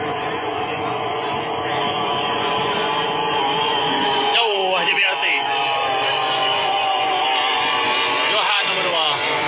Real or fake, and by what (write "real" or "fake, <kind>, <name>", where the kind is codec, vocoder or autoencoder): fake, vocoder, Vocos